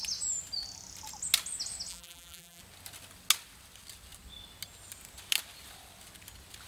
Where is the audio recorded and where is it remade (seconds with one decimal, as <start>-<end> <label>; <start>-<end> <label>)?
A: 0.0-1.9 recorded; 1.9-2.6 remade; 2.6-6.7 recorded